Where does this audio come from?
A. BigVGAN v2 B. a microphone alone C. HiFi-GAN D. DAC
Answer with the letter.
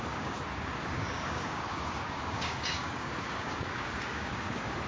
D